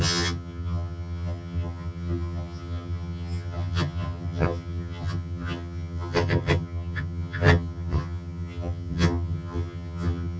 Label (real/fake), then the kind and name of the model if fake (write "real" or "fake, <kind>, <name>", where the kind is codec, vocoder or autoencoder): fake, vocoder, HiFi-GAN